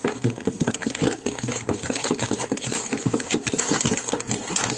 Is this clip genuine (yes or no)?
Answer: no